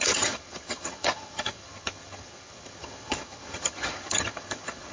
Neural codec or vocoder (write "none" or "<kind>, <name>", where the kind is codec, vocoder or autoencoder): vocoder, HiFi-GAN